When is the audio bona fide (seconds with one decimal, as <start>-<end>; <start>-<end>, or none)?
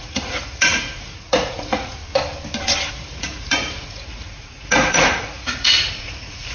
2.0-2.9